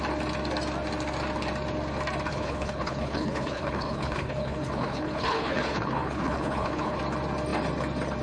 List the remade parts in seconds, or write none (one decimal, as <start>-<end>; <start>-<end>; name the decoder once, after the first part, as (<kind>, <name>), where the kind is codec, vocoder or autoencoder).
2.3-7.0 (codec, HILCodec)